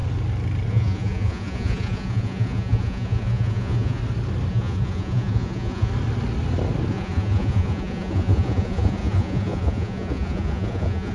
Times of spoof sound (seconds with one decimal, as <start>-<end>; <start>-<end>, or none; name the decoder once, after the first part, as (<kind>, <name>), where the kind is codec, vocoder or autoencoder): 0.7-4.0 (vocoder, Vocos); 4.5-5.9; 6.9-11.1